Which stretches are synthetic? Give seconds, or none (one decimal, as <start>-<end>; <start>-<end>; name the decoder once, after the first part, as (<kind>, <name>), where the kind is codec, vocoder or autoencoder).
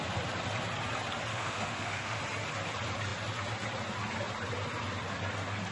1.3-2.2 (autoencoder, DAC-VAE)